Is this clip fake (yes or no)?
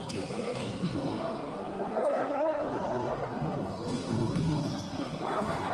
yes